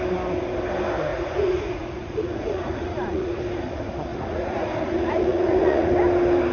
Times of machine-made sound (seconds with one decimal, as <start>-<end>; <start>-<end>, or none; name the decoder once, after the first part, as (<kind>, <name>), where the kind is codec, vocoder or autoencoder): 1.1-3.4 (vocoder, Vocos); 4.1-5.9